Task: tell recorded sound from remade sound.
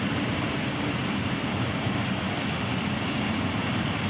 recorded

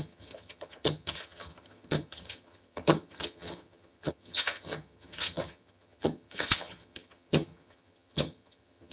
remade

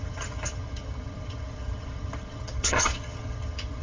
remade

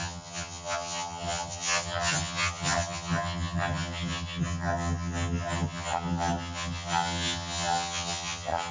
remade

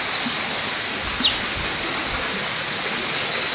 recorded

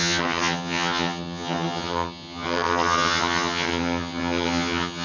remade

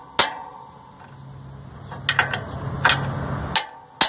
recorded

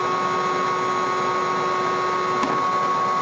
recorded